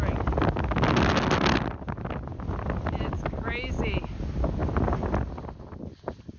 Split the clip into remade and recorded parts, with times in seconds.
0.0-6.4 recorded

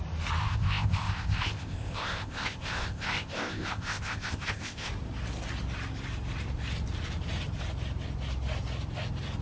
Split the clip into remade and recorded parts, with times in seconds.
0.0-0.4 recorded; 0.4-4.9 remade; 4.9-9.4 recorded